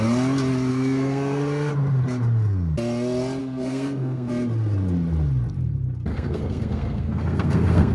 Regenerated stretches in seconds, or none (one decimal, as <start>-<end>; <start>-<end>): 0.7-1.7; 3.4-4.3; 6.1-7.9